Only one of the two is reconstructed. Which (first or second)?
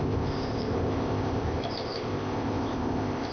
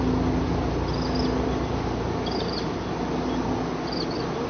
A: first